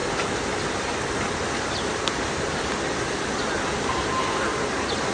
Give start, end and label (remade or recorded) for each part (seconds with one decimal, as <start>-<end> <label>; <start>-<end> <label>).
0.0-5.1 recorded

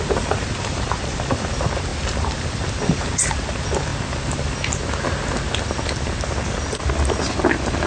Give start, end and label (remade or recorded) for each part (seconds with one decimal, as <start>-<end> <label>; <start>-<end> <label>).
0.0-7.9 recorded

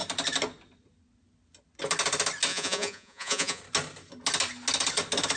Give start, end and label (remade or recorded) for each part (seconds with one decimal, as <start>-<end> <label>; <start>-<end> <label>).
0.0-2.5 recorded; 2.5-3.6 remade; 3.6-5.4 recorded

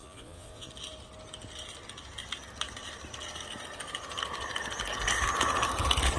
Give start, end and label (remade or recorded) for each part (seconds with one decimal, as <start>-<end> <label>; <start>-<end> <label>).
0.0-0.7 remade; 0.7-6.2 recorded

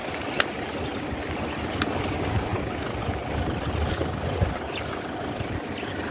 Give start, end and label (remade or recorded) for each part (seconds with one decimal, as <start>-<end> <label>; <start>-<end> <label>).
0.0-6.1 recorded

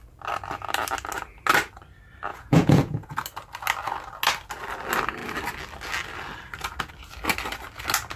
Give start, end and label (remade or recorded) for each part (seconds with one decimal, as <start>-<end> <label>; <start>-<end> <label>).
0.0-2.3 recorded; 2.3-3.1 remade; 3.1-8.2 recorded